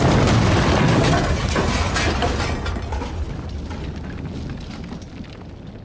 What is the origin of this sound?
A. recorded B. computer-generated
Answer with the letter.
A